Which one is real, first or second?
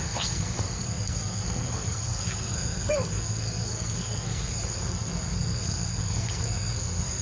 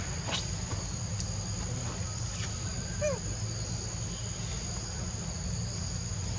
second